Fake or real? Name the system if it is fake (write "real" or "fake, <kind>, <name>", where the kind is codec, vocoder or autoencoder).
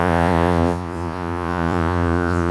fake, vocoder, Vocos